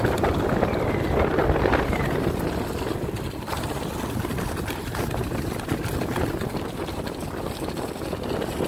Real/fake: real